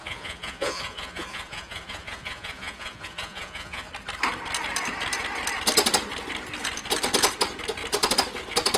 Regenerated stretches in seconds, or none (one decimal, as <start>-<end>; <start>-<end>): 0.0-3.9